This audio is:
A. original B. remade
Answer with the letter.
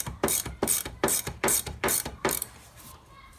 B